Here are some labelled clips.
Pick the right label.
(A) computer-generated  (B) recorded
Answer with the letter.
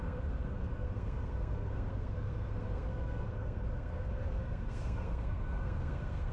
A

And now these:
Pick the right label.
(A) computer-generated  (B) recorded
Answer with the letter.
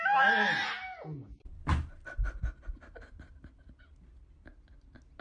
B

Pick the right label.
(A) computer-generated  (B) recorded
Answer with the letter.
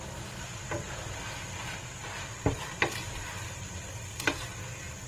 B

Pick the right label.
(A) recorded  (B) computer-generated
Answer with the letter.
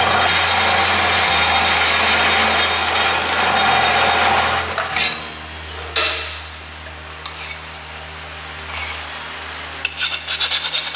A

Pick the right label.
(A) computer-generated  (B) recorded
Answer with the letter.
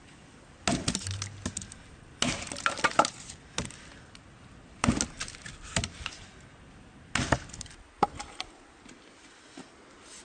B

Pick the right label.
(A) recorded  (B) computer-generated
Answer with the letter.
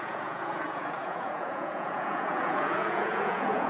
B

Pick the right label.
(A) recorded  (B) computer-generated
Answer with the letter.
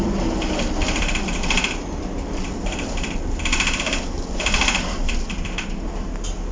A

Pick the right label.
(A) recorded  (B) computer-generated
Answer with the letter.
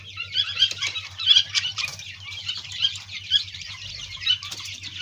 B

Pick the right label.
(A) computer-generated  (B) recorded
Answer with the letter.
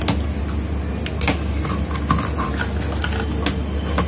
B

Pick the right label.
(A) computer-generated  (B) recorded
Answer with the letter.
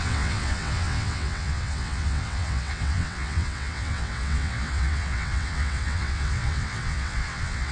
A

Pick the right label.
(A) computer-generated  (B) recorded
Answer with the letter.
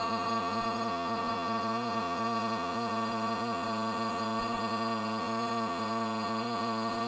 A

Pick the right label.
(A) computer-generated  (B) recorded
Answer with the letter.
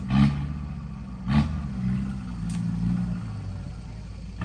B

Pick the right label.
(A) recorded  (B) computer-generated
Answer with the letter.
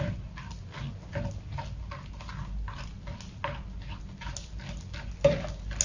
A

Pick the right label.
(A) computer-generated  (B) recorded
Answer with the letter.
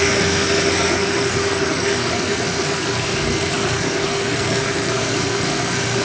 A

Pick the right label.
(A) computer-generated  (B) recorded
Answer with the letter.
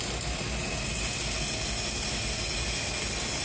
B